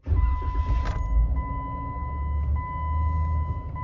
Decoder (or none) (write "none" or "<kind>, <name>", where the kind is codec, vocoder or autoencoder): none